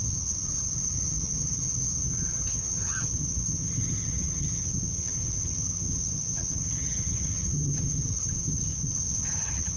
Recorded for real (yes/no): no